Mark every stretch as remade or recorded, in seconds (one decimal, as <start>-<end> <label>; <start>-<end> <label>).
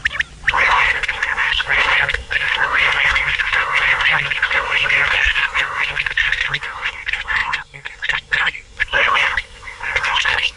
0.0-0.5 recorded; 0.5-10.6 remade